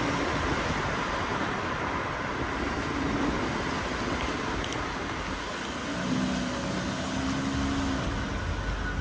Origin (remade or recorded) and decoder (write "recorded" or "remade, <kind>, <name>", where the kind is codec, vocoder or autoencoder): recorded